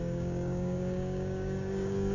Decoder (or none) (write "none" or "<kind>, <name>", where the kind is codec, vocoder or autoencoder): codec, DAC